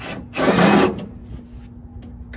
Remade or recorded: recorded